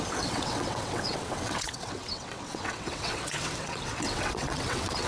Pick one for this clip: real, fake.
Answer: fake